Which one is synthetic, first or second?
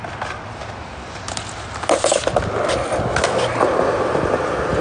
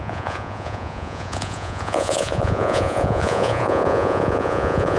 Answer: second